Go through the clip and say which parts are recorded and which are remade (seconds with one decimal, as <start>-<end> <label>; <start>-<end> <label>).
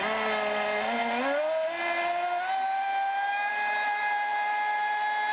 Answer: 0.0-5.3 recorded